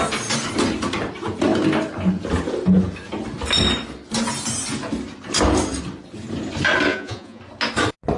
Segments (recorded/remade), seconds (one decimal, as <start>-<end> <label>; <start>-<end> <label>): 0.0-6.9 recorded; 6.9-7.4 remade; 7.4-8.2 recorded